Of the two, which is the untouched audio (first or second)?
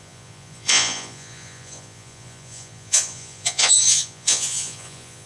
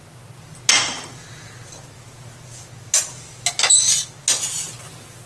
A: second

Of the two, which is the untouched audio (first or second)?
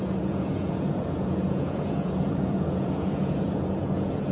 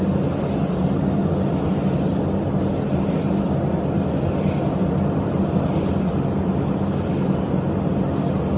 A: second